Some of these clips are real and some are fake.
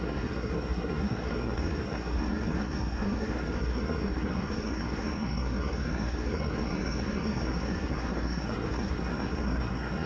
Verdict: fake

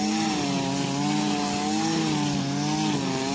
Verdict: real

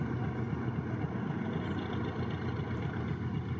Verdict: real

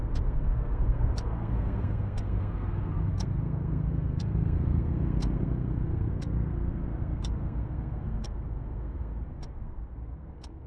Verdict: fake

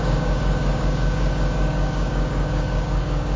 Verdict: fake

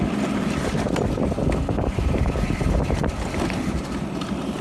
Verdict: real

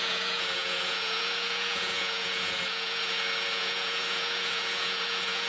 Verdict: fake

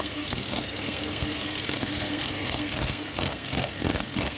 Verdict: fake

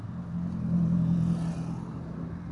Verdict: real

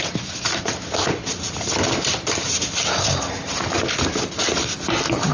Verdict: real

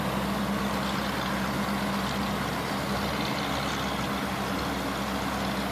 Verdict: real